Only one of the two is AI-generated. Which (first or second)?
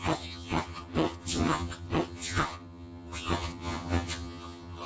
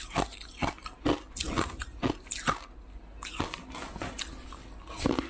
first